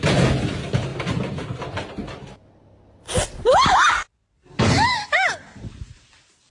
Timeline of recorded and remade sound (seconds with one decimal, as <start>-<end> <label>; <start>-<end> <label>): 0.0-2.0 remade; 2.0-4.6 recorded; 4.6-6.5 remade